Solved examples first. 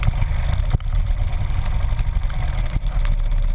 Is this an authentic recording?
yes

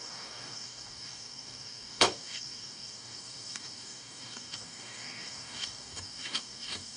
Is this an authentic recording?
no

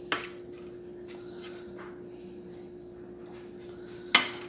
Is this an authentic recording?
yes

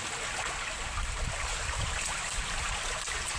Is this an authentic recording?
yes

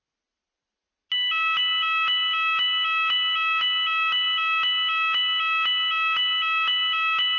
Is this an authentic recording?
yes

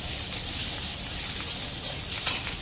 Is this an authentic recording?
yes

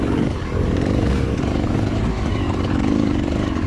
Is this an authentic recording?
no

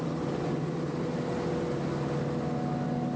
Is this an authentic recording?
yes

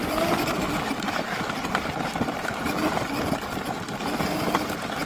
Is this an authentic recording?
yes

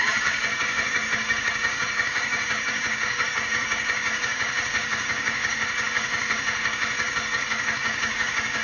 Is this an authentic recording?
no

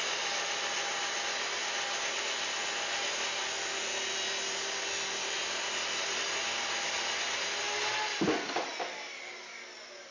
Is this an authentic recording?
yes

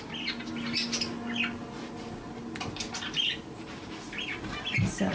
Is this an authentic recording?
yes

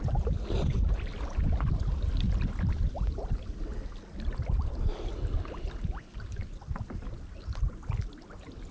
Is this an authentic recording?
yes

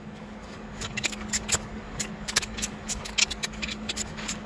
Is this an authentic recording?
no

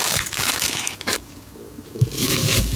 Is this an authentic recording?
no